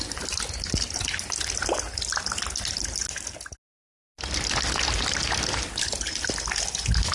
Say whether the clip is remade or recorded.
recorded